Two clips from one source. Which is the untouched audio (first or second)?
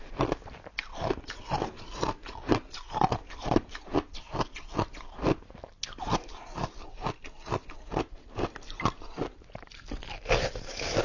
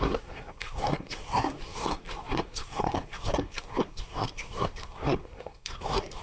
first